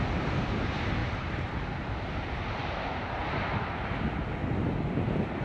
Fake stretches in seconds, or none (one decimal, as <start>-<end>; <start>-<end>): 1.0-1.5; 2.6-3.2